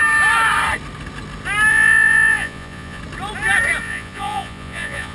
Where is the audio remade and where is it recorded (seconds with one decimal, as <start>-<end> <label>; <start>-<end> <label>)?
0.0-1.7 recorded; 1.7-3.0 remade; 3.0-3.8 recorded; 3.8-5.1 remade